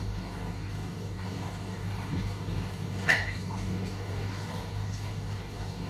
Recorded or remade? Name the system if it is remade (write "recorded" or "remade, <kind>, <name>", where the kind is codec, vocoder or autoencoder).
remade, codec, DAC